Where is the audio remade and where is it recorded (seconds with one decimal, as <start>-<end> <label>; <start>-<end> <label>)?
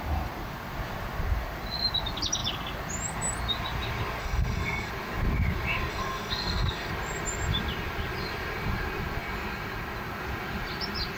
0.0-4.2 recorded; 4.2-4.9 remade; 4.9-5.9 recorded; 5.9-6.9 remade; 6.9-11.2 recorded